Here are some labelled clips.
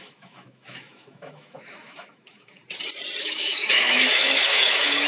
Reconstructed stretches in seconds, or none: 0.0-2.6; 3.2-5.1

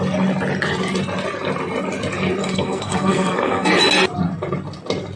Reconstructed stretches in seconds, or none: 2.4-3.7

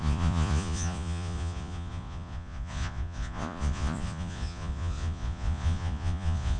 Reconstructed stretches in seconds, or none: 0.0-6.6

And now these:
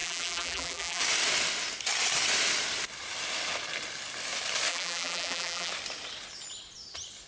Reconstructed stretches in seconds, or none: 0.0-1.0; 4.7-5.7

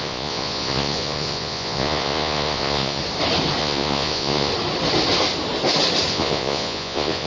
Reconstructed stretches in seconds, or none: 0.0-3.0; 3.6-4.5; 6.1-7.3

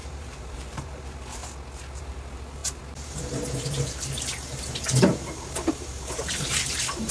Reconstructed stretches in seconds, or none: 0.0-1.4; 2.0-7.1